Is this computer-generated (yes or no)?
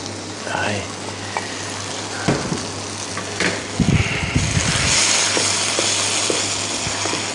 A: no